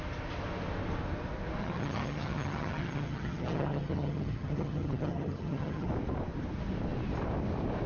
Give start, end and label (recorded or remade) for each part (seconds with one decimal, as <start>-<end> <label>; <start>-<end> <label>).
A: 0.0-1.6 recorded; 1.6-5.9 remade; 5.9-7.9 recorded